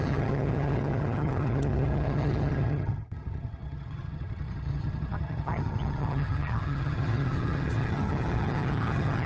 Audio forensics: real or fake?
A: fake